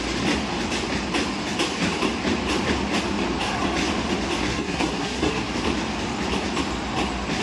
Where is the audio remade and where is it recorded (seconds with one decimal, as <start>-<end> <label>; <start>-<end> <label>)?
0.0-4.5 recorded; 4.5-5.5 remade; 5.5-7.4 recorded